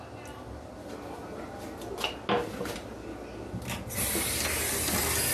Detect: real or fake real